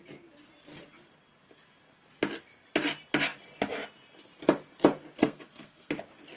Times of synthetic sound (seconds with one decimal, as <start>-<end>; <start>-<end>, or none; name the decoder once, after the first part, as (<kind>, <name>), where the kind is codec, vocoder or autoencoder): 5.2-5.9 (codec, SNAC)